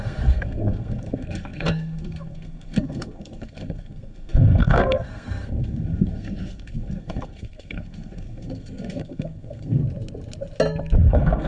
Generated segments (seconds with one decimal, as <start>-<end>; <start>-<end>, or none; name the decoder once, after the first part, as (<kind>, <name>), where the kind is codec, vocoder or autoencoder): 0.0-9.8 (codec, SNAC); 11.1-11.5